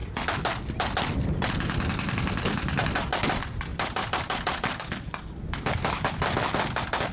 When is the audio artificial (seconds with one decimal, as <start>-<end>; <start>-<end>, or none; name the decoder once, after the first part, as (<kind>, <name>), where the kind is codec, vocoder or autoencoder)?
3.7-6.1 (vocoder, BigVGAN v2)

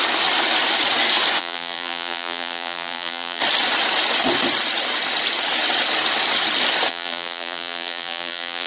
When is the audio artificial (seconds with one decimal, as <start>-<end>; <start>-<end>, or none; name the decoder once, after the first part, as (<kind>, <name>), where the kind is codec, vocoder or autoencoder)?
1.4-3.4 (vocoder, BigVGAN v2); 6.9-8.7

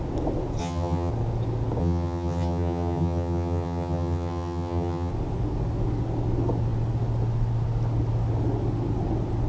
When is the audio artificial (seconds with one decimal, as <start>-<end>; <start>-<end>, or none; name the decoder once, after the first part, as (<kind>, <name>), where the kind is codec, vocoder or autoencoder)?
0.6-1.1 (vocoder, HiFi-GAN); 1.8-5.1